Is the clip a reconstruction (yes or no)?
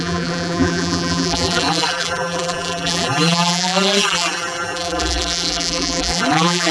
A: yes